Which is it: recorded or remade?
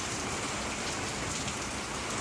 recorded